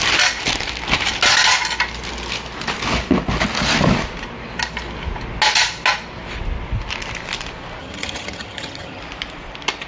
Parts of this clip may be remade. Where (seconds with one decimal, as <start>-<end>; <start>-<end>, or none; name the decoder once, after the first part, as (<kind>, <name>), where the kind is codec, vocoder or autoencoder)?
7.8-9.0 (vocoder, HiFi-GAN)